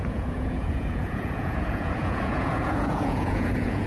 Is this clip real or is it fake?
fake